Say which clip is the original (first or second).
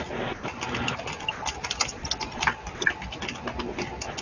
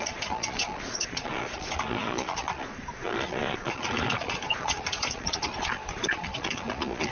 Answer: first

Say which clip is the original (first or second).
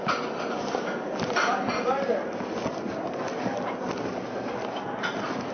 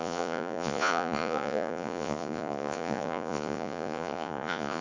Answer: first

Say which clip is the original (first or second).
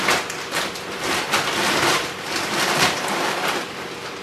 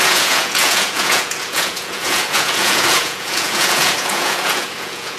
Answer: first